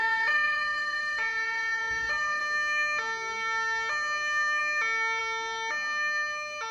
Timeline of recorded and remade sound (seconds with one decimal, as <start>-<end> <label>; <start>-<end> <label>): 0.0-2.4 remade; 2.4-6.7 recorded